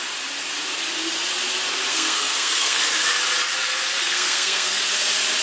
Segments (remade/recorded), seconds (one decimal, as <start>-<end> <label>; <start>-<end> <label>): 0.0-1.9 recorded; 1.9-2.8 remade; 2.8-4.0 recorded; 4.0-4.8 remade; 4.8-5.4 recorded